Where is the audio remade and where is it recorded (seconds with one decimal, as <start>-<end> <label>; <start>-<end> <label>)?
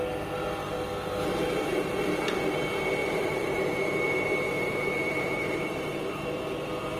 0.0-3.0 recorded; 3.0-6.5 remade; 6.5-7.0 recorded